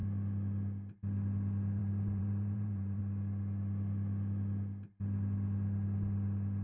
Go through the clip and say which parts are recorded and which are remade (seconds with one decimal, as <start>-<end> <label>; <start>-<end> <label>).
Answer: 0.0-1.8 recorded; 1.8-3.0 remade; 3.0-6.6 recorded